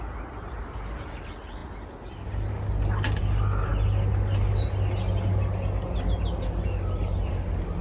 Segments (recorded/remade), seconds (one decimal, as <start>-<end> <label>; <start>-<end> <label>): 0.0-7.8 recorded